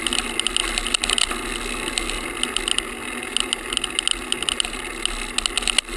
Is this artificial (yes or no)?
no